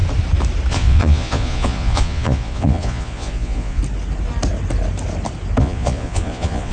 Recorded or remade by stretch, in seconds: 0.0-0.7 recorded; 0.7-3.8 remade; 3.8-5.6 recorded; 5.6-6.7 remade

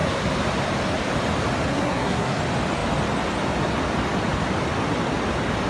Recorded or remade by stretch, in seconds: 0.0-1.7 recorded; 1.7-2.4 remade; 2.4-5.7 recorded

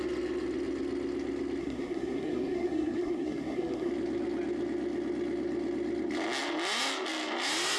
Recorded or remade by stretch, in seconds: 0.0-1.6 recorded; 1.6-3.9 remade; 3.9-7.8 recorded